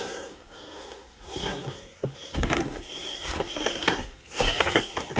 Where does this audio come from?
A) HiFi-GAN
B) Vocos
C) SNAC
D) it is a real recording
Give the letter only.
C